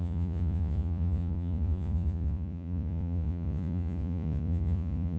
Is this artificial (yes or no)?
yes